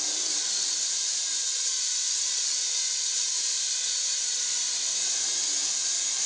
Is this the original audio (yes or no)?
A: yes